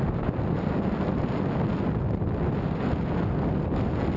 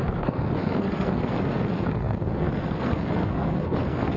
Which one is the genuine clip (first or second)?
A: first